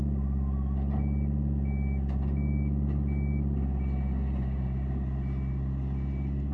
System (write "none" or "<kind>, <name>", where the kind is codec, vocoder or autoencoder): none